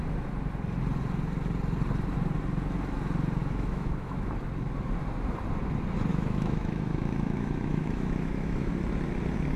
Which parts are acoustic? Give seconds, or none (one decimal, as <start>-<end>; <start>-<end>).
0.0-3.4; 4.3-6.1; 8.7-9.6